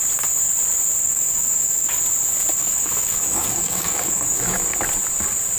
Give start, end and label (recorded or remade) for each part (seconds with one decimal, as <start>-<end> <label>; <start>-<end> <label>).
0.0-1.0 recorded; 1.0-2.0 remade; 2.0-2.6 recorded; 2.6-4.6 remade; 4.6-5.6 recorded